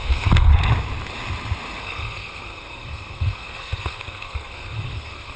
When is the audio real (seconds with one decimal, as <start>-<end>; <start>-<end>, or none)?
0.5-1.8